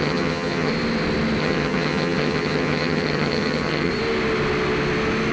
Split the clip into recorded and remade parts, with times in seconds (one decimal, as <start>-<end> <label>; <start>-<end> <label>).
0.0-0.7 remade; 0.7-1.4 recorded; 1.4-3.9 remade; 3.9-5.3 recorded